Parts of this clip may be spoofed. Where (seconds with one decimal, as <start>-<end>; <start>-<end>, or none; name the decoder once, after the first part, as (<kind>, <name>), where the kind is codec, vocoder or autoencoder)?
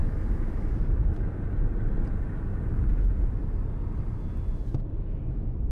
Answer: none